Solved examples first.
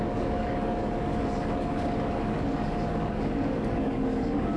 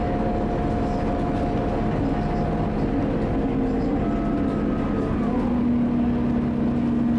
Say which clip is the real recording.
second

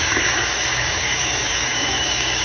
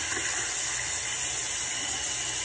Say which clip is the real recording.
second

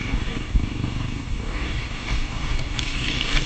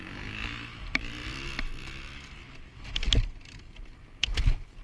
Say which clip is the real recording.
second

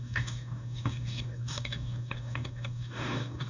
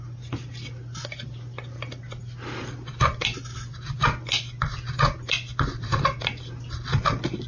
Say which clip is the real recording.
second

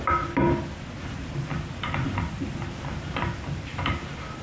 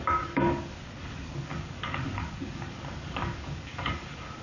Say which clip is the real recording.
first